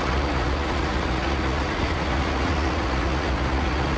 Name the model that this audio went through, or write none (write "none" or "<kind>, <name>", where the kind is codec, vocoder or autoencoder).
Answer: vocoder, Vocos